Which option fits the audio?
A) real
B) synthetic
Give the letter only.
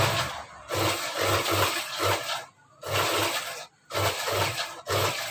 A